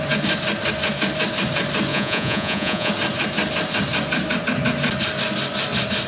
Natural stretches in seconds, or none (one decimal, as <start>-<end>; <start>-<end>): 0.0-1.9; 2.9-6.1